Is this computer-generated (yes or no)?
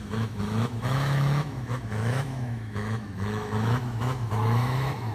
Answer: yes